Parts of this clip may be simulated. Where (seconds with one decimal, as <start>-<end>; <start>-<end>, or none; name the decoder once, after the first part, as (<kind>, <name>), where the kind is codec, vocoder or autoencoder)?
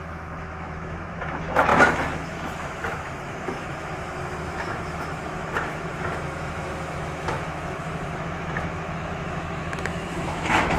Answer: 0.0-10.8 (autoencoder, DAC-VAE)